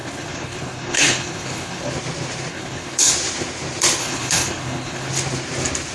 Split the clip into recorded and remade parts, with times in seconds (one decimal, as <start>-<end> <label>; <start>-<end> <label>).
0.0-1.9 remade; 1.9-2.5 recorded; 2.5-3.1 remade; 3.1-4.0 recorded; 4.0-5.1 remade; 5.1-5.9 recorded